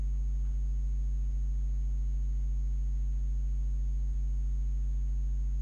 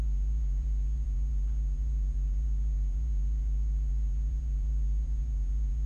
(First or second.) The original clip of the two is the first